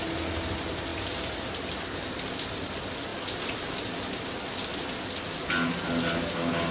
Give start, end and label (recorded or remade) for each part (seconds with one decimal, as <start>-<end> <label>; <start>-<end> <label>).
0.0-6.7 recorded